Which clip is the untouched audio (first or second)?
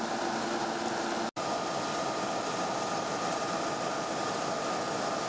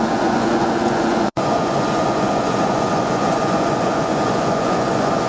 first